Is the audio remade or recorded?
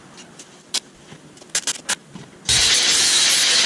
recorded